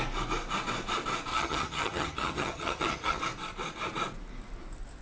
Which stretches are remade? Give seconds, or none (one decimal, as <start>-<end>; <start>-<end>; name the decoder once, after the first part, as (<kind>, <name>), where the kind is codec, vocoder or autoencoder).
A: 1.3-3.2 (vocoder, HiFi-GAN)